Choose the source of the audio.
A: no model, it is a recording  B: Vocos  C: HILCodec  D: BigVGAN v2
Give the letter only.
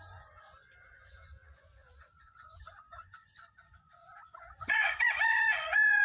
B